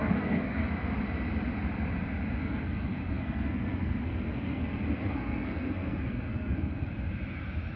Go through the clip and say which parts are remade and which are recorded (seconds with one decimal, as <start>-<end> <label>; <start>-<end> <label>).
0.0-0.7 remade; 0.7-2.4 recorded; 2.4-6.9 remade; 6.9-7.8 recorded